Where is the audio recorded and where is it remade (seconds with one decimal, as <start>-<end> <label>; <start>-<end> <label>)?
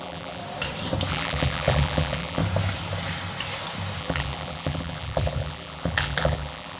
0.0-0.4 remade; 0.4-1.1 recorded; 1.1-2.4 remade; 2.4-4.0 recorded; 4.0-6.8 remade